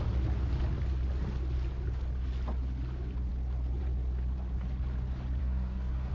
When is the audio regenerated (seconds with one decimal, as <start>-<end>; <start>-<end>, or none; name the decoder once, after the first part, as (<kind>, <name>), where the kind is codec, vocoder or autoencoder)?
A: 5.4-6.1 (codec, SNAC)